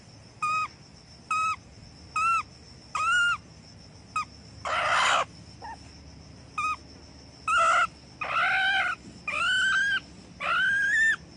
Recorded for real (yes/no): yes